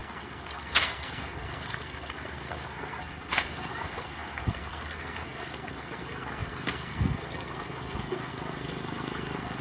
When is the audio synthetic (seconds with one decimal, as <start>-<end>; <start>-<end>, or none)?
0.0-9.6